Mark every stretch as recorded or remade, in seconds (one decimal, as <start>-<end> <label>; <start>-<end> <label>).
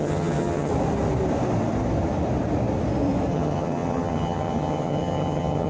0.0-0.7 remade; 0.7-3.3 recorded; 3.3-5.7 remade